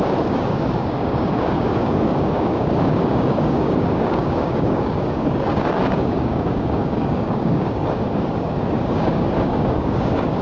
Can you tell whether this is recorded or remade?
remade